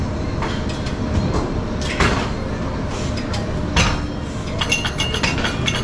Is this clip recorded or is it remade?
recorded